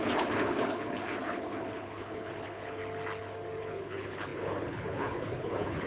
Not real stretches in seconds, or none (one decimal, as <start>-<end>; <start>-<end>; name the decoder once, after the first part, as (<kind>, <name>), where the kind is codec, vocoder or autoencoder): 0.0-2.8 (codec, HILCodec); 3.6-5.9